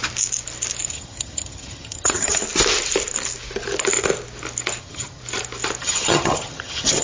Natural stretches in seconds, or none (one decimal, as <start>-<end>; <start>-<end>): 0.0-0.9; 2.4-4.8; 5.2-5.8